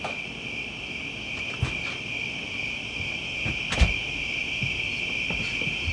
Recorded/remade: recorded